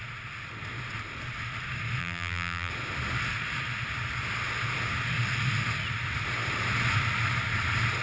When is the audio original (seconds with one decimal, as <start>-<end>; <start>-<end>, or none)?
0.0-2.0; 2.7-8.0